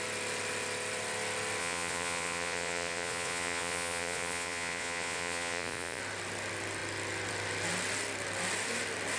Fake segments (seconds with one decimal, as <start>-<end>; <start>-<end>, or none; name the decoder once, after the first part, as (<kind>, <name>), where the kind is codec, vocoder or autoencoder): 1.6-6.0 (vocoder, Vocos)